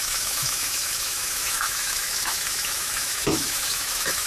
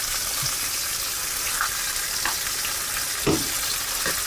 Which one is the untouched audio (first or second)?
second